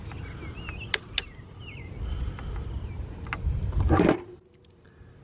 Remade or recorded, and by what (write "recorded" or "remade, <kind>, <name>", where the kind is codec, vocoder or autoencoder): recorded